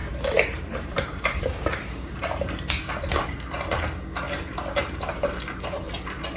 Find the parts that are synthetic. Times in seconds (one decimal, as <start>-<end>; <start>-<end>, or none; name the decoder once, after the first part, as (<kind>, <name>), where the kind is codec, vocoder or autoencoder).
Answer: 0.0-2.9 (vocoder, BigVGAN v2); 4.8-6.4